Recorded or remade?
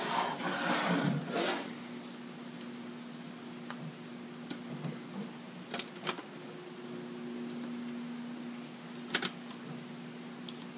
recorded